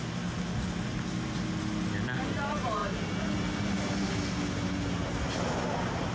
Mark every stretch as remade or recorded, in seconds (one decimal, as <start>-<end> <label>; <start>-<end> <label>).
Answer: 0.0-6.1 recorded